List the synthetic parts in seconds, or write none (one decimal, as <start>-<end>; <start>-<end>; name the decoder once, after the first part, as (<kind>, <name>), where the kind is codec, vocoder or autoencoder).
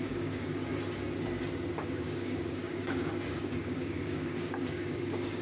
0.0-0.6 (codec, DAC); 1.9-5.4